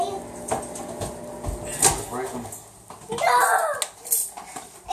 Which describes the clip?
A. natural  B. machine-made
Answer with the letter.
A